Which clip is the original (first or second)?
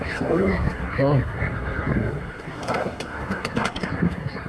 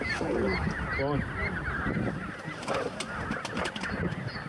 second